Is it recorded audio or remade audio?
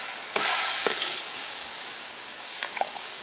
remade